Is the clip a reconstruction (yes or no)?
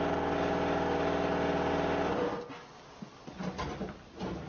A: no